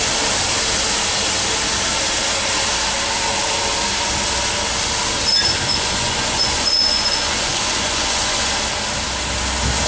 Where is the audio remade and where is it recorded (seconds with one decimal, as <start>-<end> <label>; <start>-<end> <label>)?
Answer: 0.0-5.7 recorded; 5.7-8.5 remade; 8.5-9.9 recorded